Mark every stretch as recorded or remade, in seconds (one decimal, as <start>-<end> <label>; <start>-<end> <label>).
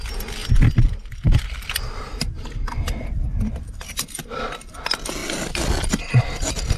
0.0-0.4 recorded; 0.4-4.4 remade; 4.4-6.8 recorded